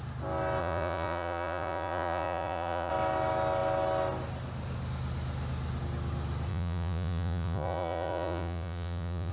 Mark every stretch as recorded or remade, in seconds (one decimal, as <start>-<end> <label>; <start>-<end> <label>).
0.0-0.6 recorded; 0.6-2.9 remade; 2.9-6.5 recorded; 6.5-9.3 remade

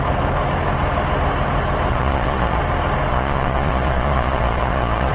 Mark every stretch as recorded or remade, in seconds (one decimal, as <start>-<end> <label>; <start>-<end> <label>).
0.0-1.9 recorded; 1.9-2.6 remade; 2.6-3.1 recorded; 3.1-5.1 remade

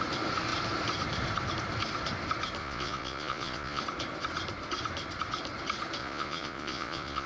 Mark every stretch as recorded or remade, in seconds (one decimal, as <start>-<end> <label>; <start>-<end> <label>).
0.0-2.6 recorded; 2.6-3.8 remade; 3.8-6.0 recorded; 6.0-7.3 remade

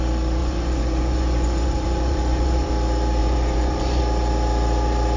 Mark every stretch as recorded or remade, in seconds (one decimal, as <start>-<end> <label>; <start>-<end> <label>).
0.0-0.4 recorded; 0.4-2.7 remade; 2.7-3.2 recorded; 3.2-4.0 remade; 4.0-5.2 recorded

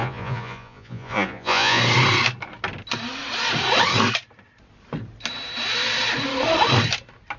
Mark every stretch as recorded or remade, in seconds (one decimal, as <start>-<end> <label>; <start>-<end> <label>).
0.0-1.8 remade; 1.8-7.4 recorded

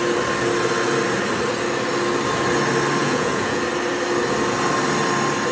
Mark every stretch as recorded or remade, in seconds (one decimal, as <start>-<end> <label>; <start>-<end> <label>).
0.0-3.0 recorded; 3.0-3.6 remade; 3.6-5.5 recorded

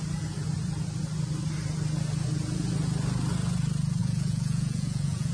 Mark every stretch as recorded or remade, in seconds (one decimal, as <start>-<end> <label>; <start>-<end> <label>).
0.0-4.0 recorded; 4.0-5.3 remade